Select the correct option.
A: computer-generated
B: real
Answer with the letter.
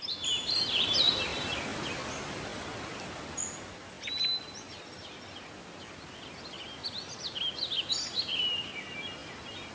B